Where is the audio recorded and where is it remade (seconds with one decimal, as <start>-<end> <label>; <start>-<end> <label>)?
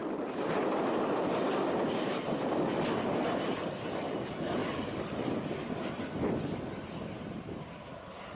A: 0.0-8.4 recorded